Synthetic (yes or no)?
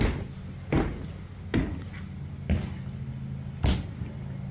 no